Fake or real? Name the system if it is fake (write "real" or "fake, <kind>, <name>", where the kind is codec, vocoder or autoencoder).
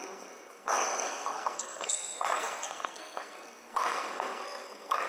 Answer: fake, codec, SNAC